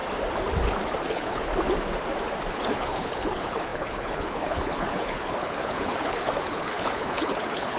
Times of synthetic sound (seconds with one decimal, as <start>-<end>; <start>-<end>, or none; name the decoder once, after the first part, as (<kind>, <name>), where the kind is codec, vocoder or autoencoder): 1.1-1.5 (codec, HILCodec); 2.5-7.8

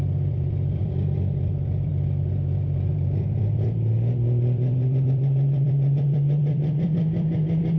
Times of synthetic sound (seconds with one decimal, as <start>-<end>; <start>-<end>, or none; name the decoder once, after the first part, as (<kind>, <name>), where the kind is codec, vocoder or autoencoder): 0.0-1.9 (vocoder, BigVGAN v2); 2.9-7.8

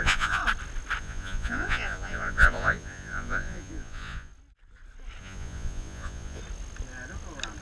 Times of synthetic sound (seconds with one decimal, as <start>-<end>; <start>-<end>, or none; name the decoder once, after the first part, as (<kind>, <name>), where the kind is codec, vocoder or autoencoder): 0.0-0.4 (vocoder, Vocos); 1.0-4.3; 5.2-6.4

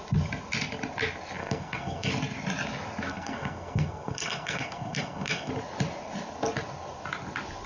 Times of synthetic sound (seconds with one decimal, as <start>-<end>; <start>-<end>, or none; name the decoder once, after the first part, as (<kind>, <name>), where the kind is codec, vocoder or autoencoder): 1.4-2.1 (codec, SNAC); 3.1-5.5

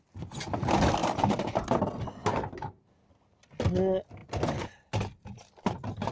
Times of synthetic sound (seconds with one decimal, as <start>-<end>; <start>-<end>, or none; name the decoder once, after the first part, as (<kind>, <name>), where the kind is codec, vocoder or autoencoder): 1.0-1.8 (vocoder, BigVGAN v2); 2.2-2.9; 4.2-6.1